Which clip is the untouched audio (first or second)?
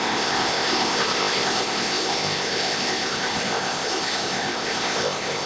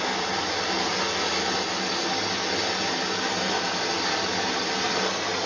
second